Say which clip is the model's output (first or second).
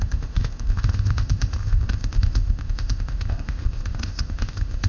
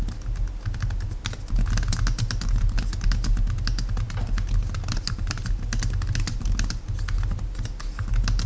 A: first